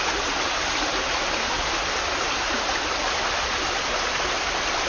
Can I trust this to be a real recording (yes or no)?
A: yes